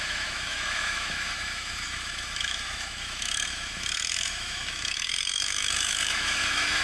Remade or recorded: remade